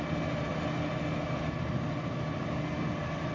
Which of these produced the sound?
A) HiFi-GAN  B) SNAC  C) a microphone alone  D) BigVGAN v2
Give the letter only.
C